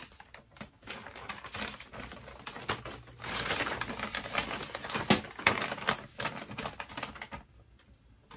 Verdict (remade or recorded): recorded